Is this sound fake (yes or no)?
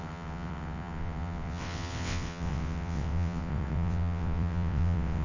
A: yes